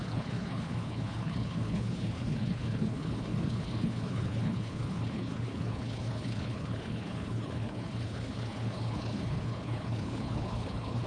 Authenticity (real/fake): fake